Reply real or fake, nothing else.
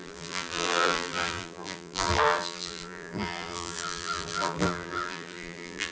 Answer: fake